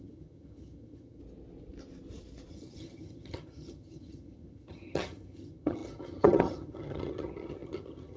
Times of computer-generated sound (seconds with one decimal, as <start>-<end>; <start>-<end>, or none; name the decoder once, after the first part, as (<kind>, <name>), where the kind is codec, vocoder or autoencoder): 0.0-1.2 (vocoder, HiFi-GAN); 2.5-8.2